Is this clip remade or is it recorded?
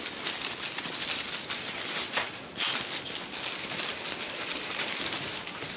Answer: recorded